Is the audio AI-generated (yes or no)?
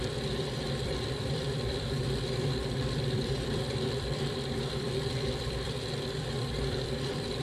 yes